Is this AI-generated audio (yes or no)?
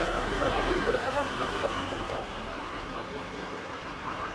yes